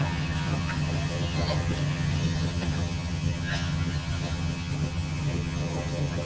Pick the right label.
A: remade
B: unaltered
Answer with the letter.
A